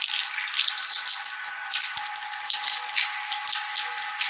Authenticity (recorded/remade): recorded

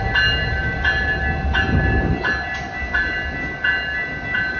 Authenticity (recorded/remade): recorded